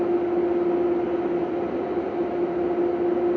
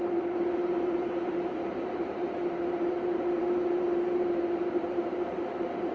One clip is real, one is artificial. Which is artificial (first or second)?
second